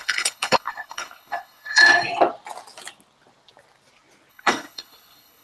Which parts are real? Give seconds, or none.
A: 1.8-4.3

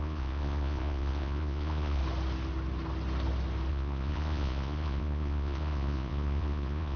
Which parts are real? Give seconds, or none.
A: 2.0-3.7